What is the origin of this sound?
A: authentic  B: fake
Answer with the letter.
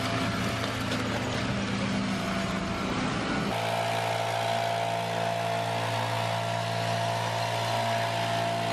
A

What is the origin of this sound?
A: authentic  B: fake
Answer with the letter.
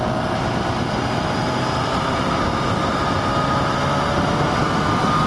A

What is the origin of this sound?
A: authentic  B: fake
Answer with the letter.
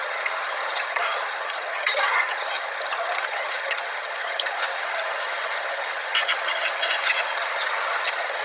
B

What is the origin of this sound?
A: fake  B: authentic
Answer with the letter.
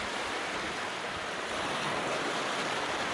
B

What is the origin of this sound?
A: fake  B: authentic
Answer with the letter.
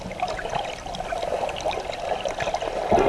B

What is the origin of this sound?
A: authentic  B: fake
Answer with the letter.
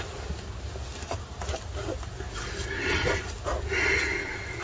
A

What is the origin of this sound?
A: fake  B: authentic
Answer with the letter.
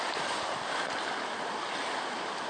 B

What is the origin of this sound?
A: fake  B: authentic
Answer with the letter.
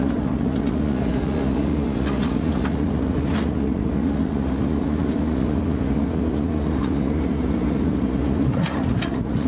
A